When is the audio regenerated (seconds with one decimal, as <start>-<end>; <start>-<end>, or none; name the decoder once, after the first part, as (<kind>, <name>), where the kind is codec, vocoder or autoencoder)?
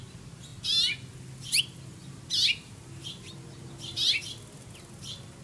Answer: none